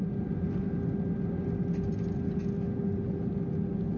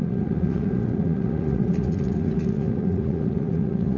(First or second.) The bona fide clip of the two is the first